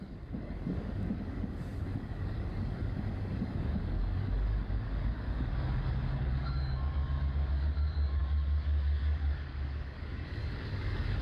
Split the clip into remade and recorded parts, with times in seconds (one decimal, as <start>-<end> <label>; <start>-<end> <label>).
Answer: 0.0-11.2 remade